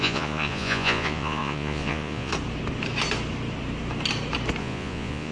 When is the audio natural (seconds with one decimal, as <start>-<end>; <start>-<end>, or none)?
2.3-4.6